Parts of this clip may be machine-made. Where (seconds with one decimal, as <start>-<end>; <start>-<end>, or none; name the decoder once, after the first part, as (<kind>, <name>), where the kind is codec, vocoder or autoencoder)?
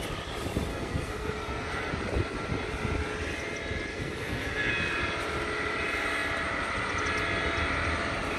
0.7-1.9 (codec, SNAC); 3.9-4.7